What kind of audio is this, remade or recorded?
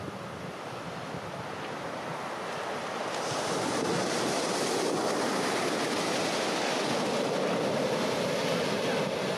recorded